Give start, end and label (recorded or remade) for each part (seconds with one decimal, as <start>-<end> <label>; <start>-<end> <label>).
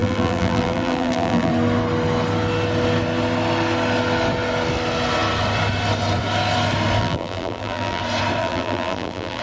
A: 0.0-1.5 remade; 1.5-7.0 recorded; 7.0-8.0 remade; 8.0-8.4 recorded; 8.4-9.4 remade